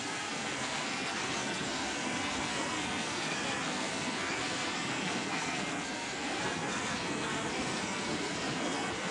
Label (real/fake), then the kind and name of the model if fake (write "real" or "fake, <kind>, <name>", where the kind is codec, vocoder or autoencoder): fake, codec, SNAC